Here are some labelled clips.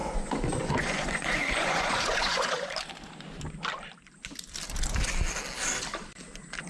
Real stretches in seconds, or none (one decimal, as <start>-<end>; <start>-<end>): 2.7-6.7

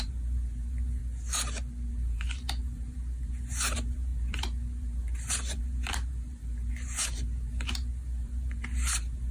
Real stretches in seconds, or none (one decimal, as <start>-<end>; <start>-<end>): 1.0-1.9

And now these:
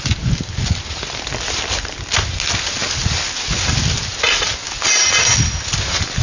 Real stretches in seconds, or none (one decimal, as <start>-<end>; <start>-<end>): 0.0-6.2